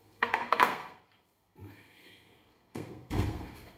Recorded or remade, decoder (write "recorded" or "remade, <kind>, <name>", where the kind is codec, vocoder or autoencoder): remade, codec, SNAC